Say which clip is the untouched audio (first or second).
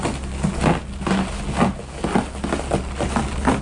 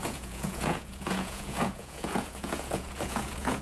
first